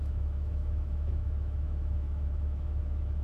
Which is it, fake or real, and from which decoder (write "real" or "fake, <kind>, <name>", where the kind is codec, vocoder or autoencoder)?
fake, autoencoder, DAC-VAE